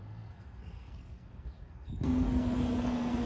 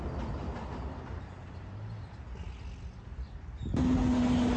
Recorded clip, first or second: second